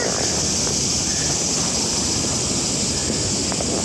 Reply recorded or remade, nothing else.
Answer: recorded